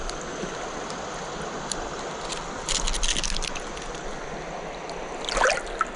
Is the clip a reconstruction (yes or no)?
no